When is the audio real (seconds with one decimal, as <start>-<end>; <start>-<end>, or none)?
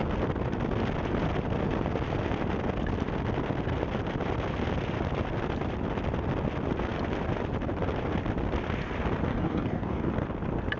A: 0.0-9.3; 10.1-10.8